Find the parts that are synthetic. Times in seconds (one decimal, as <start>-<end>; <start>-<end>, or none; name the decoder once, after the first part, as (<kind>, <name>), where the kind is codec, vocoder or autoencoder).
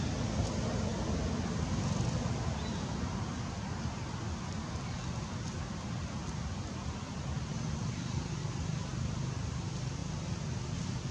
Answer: none